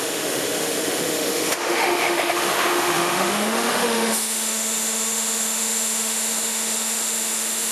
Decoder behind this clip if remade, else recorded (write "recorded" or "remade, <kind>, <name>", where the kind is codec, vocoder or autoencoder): remade, autoencoder, DAC-VAE